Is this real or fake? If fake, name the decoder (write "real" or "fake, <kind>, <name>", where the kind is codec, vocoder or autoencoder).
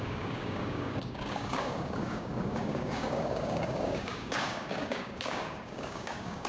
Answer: fake, codec, DAC